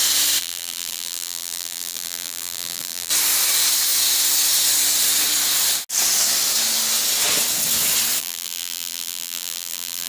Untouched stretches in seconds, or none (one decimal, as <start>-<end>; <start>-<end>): 0.0-0.4; 3.1-8.2